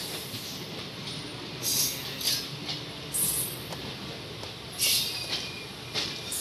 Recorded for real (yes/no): yes